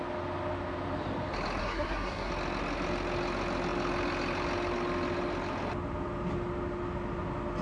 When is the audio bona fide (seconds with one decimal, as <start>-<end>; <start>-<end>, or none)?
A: 0.0-1.6; 2.3-7.6